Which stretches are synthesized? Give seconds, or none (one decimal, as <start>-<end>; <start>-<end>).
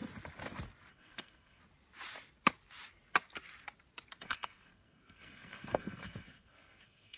0.9-1.6; 4.2-7.2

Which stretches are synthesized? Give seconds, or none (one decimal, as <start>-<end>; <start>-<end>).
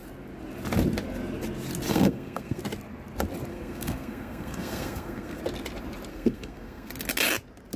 1.9-2.6; 3.5-5.4; 6.1-6.9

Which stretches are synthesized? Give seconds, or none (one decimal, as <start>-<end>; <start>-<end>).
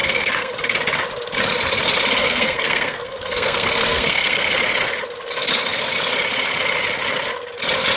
0.0-0.5; 2.2-4.5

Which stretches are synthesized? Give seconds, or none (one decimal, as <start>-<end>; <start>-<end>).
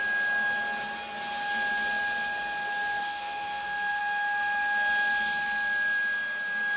3.0-4.0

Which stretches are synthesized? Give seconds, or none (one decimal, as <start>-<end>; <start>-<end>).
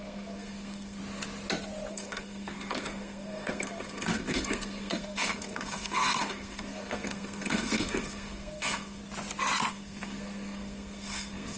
0.0-1.0; 1.9-9.0; 9.7-11.6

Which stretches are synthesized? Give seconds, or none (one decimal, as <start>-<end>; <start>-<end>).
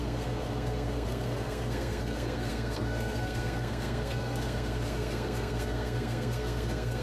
0.0-7.0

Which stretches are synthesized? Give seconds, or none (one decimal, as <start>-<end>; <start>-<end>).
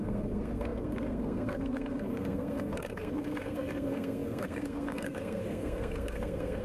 0.0-6.6